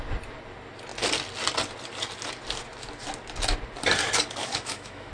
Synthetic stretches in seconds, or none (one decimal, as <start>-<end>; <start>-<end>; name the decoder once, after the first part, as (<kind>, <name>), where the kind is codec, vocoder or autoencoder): 4.4-5.1 (autoencoder, DAC-VAE)